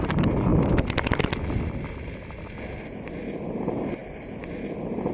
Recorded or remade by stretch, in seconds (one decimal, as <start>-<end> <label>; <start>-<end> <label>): 0.0-0.5 remade; 0.5-3.6 recorded; 3.6-4.0 remade; 4.0-5.1 recorded